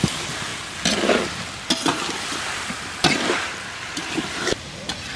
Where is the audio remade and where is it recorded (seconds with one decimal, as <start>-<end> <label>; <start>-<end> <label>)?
0.0-5.2 recorded